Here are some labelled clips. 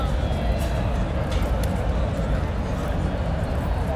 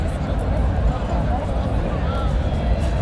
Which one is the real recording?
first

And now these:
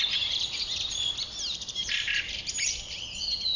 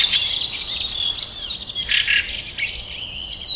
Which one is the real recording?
second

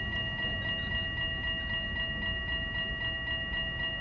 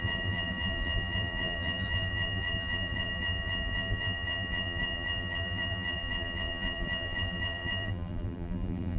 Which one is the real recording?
first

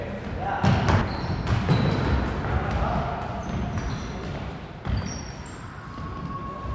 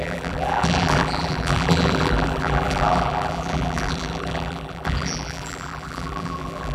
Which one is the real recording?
first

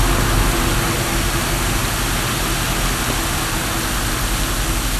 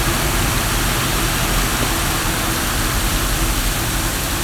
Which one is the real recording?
first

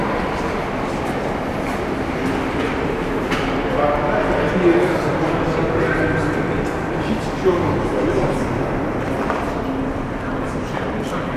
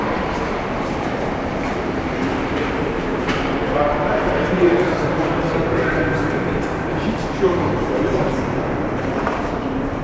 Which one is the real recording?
first